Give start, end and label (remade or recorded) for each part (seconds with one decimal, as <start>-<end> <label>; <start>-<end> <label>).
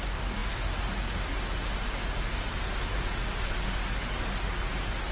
0.0-5.1 recorded